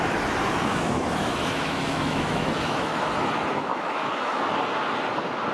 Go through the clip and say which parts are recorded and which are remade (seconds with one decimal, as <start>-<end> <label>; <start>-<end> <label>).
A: 0.0-0.7 recorded; 0.7-3.0 remade; 3.0-3.7 recorded; 3.7-4.4 remade; 4.4-5.5 recorded